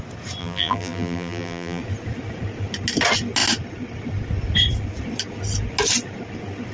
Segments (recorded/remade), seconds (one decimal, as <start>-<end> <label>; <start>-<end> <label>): 0.0-0.4 recorded; 0.4-1.8 remade; 1.8-6.7 recorded